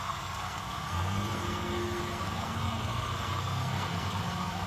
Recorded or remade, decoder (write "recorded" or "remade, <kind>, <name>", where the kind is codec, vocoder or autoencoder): remade, codec, SNAC